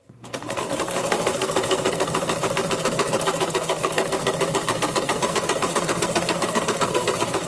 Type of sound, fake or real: fake